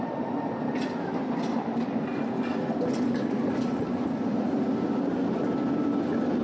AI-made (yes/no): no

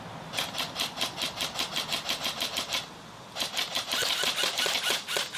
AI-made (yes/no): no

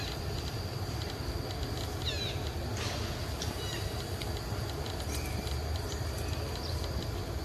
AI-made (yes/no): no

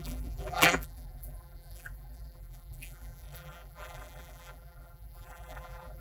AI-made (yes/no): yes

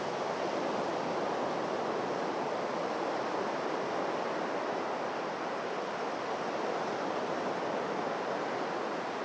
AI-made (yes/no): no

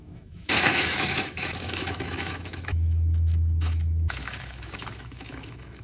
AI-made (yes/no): yes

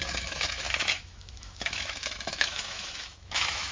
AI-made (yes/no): yes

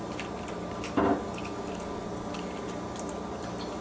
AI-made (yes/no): no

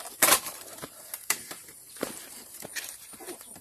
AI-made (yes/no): yes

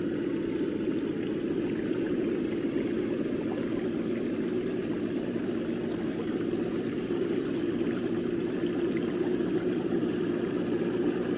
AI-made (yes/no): yes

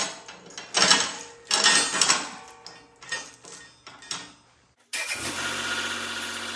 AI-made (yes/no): no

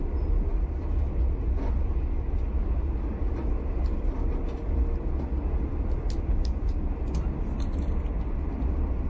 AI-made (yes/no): no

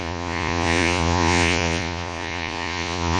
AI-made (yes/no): yes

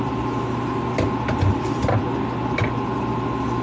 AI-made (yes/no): no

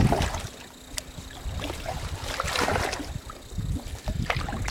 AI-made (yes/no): no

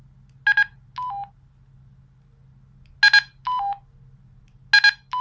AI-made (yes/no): no